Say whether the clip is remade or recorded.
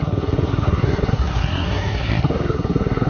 remade